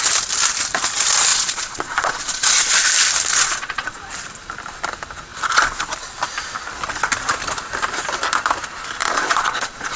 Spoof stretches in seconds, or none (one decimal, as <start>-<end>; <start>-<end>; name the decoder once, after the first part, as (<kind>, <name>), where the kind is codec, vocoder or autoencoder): 1.3-2.9 (vocoder, Vocos); 3.3-4.0; 9.0-10.0